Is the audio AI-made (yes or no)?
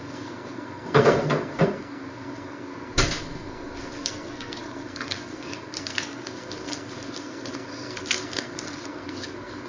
yes